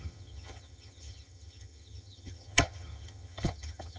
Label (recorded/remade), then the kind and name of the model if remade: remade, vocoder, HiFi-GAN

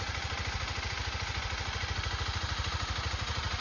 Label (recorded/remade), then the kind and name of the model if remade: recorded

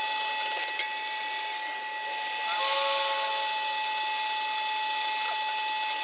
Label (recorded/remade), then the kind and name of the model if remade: recorded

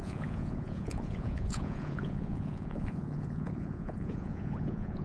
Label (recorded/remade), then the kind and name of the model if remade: remade, vocoder, Vocos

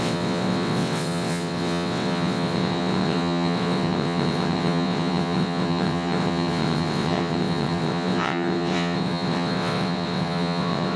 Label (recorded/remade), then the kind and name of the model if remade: remade, vocoder, WaveNeXt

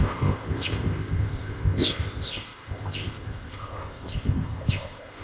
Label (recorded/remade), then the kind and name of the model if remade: remade, codec, ZipCodec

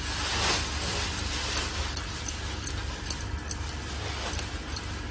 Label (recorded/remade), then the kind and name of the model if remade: recorded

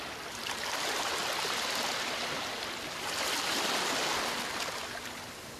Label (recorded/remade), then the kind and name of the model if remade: recorded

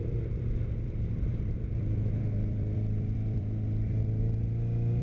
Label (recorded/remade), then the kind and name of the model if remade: remade, vocoder, BigVGAN v2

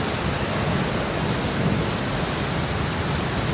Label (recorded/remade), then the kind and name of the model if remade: recorded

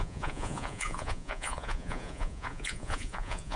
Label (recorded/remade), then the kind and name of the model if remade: remade, vocoder, Vocos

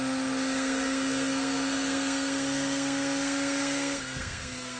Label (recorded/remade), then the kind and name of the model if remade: remade, codec, SNAC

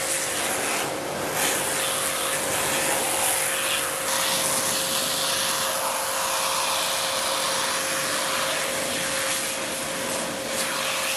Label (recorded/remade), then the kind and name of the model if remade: recorded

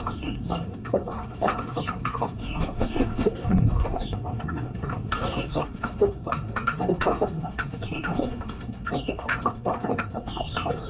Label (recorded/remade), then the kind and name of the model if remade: remade, codec, SNAC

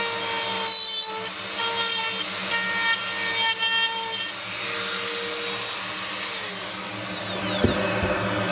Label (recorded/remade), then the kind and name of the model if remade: recorded